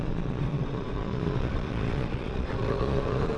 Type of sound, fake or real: fake